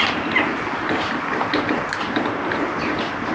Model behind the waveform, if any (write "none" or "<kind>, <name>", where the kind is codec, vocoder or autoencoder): vocoder, BigVGAN v2